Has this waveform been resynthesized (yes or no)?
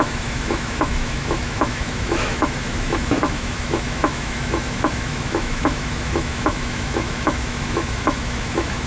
yes